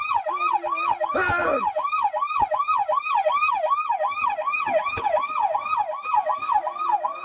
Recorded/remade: recorded